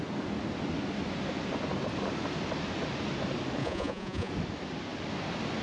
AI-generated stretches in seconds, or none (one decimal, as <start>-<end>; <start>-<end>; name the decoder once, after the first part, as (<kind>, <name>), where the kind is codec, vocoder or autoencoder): 3.6-4.3 (vocoder, Vocos)